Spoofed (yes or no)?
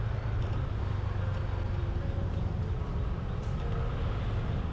no